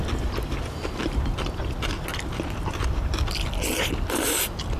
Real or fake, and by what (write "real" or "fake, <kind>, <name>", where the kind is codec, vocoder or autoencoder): real